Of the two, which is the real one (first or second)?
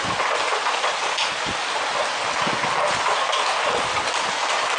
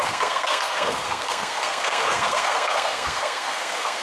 first